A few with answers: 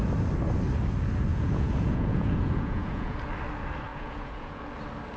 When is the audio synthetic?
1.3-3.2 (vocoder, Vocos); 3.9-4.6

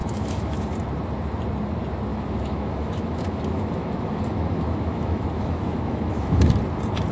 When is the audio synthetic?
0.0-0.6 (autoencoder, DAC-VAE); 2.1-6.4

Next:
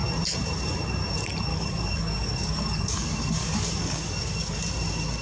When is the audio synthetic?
1.5-4.6 (codec, DAC)

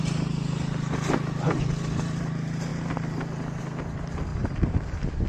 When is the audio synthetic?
none

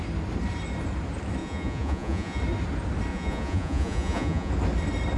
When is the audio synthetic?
1.4-2.4 (vocoder, Vocos); 3.1-4.5

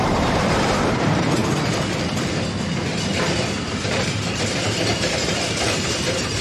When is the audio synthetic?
0.0-1.4 (vocoder, BigVGAN v2); 3.7-6.4

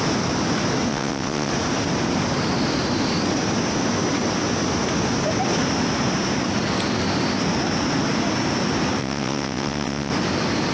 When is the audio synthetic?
0.9-1.5 (vocoder, WaveNeXt); 9.0-10.1

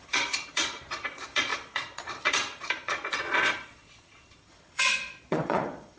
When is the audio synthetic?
0.0-6.0 (vocoder, Vocos)